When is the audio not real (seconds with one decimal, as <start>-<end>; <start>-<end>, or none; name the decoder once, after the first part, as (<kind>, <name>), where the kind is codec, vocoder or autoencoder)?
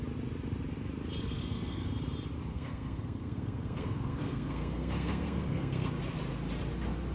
1.2-1.9 (codec, SNAC); 2.5-5.9